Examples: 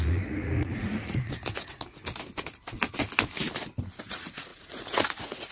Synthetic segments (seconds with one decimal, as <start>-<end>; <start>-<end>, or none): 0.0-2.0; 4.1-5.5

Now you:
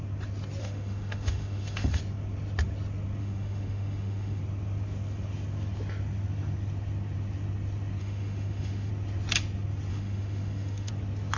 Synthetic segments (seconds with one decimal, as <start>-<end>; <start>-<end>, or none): 0.6-2.0; 3.2-4.4; 8.0-8.9; 9.9-10.9

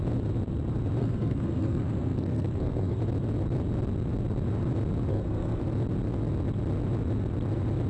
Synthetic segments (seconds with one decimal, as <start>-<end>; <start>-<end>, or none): 1.0-3.0; 5.1-5.6

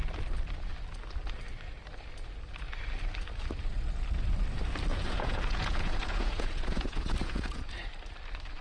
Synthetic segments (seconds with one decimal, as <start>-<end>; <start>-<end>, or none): 4.9-7.7

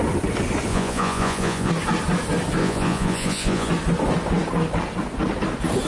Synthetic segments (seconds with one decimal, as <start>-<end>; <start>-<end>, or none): 0.7-1.7; 2.6-3.7

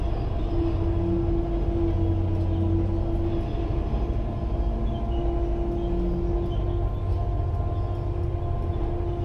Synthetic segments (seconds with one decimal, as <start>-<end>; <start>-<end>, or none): none

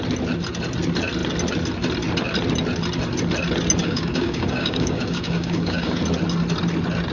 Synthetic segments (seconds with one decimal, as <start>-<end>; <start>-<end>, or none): 3.8-6.0